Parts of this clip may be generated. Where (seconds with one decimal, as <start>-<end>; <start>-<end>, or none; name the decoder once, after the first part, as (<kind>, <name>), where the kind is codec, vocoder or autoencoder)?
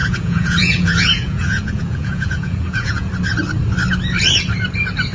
0.0-3.1 (vocoder, Vocos)